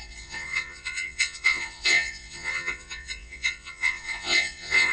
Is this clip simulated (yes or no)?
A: yes